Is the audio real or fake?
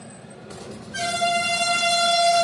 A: real